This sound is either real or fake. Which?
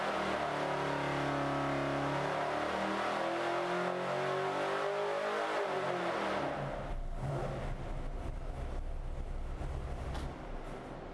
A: real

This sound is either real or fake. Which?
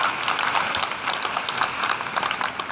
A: real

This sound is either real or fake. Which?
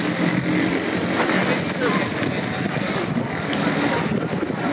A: real